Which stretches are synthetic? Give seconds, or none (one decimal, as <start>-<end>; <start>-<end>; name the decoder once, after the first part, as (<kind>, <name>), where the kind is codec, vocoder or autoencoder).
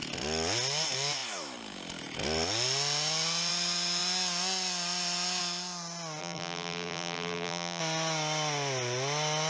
6.2-7.8 (vocoder, BigVGAN v2)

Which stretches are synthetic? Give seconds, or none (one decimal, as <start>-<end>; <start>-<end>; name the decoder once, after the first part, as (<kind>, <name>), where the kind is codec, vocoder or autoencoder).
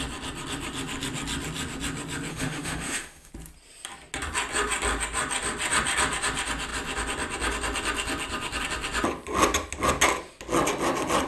2.3-3.3 (autoencoder, DAC-VAE)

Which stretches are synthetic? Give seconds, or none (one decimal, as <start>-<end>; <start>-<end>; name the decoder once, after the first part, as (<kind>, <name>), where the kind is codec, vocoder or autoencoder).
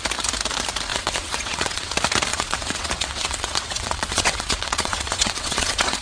0.9-1.9 (vocoder, WaveNeXt); 2.3-6.0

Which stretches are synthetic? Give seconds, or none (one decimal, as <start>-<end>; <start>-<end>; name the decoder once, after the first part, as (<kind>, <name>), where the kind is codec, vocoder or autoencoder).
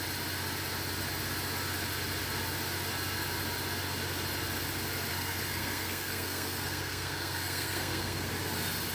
5.1-8.3 (codec, SNAC)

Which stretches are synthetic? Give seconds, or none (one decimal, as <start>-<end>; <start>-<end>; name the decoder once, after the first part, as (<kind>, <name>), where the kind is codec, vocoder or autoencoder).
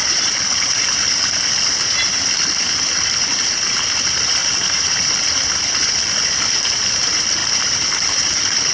0.0-1.2 (vocoder, BigVGAN v2); 4.4-5.7; 7.4-8.7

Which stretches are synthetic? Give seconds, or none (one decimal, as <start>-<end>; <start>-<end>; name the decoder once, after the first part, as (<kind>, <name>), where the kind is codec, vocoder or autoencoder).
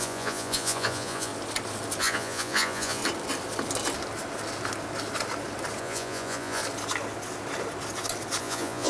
0.0-1.3 (vocoder, Vocos); 2.0-3.0; 5.8-6.6; 8.4-8.9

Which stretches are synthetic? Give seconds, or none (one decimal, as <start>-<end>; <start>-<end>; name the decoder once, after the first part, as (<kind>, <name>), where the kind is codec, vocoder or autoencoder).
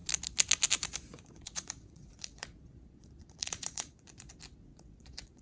1.1-4.3 (vocoder, Vocos); 4.7-5.4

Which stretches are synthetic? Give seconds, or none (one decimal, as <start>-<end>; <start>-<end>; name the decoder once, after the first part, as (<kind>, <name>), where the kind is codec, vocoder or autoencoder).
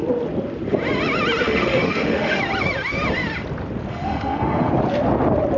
1.4-2.4 (autoencoder, DAC-VAE); 3.9-4.7